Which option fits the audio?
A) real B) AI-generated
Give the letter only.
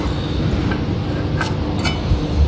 A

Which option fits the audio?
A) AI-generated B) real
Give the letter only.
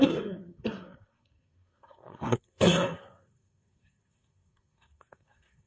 A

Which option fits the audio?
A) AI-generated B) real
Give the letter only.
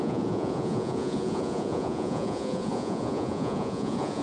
A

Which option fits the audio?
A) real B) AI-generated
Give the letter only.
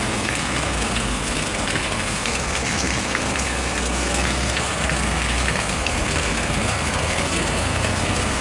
B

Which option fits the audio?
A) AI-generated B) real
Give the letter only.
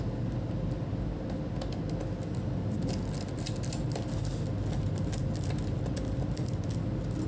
B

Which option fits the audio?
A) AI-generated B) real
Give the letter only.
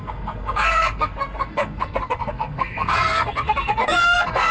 A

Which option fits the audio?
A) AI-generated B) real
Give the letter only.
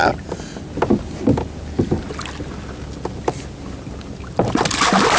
B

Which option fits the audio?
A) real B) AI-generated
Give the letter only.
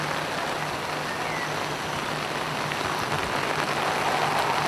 A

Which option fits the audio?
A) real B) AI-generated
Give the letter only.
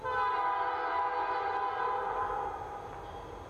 A